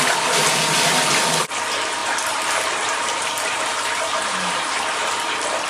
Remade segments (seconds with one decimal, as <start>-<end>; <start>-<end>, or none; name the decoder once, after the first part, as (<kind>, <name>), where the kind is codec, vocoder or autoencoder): 2.0-5.1 (vocoder, BigVGAN v2)